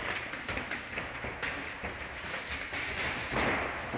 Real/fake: real